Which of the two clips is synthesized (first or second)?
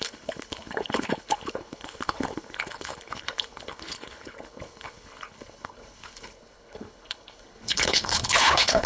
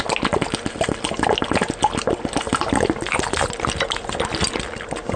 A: first